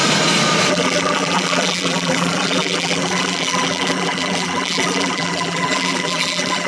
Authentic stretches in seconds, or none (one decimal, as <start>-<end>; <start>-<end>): 0.0-0.7